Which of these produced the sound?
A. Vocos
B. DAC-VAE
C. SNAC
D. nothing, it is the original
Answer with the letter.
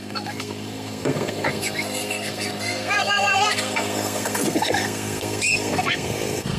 C